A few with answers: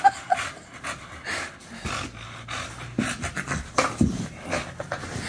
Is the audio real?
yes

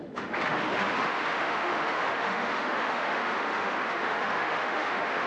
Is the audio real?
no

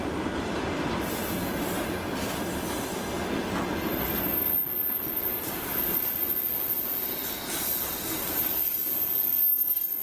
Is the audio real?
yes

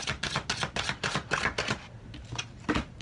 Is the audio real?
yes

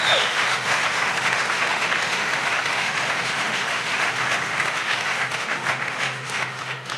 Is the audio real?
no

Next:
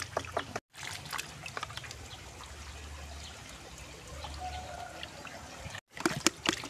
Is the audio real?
yes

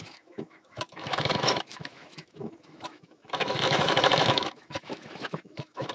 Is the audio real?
no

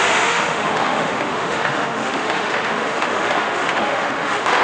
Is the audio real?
no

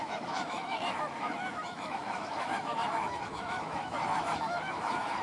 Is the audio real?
no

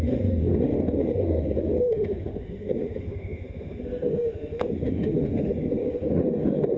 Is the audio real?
no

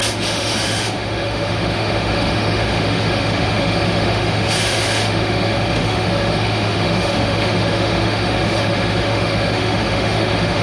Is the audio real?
no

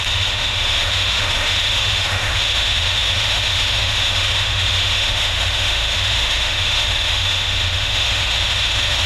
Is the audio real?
no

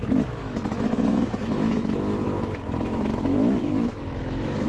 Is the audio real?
no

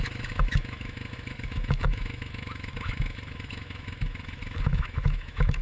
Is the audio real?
no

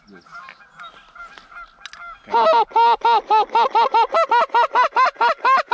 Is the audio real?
yes